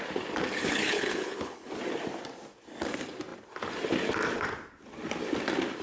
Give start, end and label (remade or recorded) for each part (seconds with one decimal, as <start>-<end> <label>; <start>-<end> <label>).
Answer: 0.0-0.6 recorded; 0.6-1.8 remade; 1.8-5.8 recorded